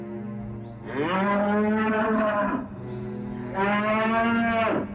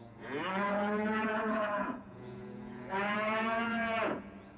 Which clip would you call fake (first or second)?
second